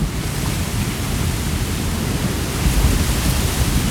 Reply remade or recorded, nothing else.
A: recorded